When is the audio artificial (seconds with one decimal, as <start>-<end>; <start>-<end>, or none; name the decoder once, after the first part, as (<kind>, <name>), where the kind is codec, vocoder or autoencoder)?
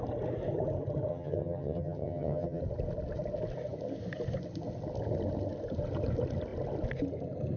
1.1-2.6 (vocoder, HiFi-GAN)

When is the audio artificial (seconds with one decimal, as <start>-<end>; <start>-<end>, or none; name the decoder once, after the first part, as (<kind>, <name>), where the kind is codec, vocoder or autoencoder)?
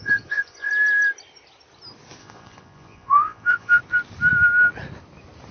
0.0-0.7 (vocoder, Vocos); 2.2-3.8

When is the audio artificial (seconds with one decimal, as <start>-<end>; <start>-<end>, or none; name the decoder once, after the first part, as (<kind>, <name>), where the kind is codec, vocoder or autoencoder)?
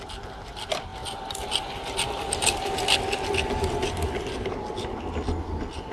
none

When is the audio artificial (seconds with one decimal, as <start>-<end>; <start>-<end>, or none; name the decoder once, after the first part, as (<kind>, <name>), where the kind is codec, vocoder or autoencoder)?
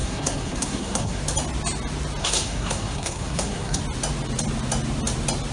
0.0-1.2 (codec, SNAC); 2.2-3.8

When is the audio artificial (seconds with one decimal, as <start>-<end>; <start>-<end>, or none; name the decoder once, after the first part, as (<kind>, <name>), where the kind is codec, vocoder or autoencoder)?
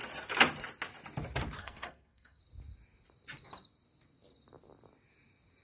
1.6-2.4 (codec, SNAC)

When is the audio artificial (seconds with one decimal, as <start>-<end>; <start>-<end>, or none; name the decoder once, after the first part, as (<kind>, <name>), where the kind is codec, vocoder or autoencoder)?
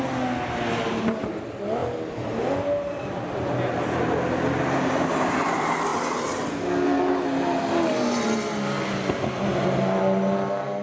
none